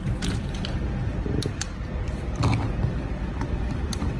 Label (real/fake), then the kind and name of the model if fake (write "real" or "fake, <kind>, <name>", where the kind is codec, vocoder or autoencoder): fake, vocoder, BigVGAN v2